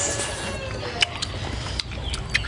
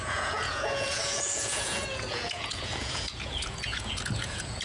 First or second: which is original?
first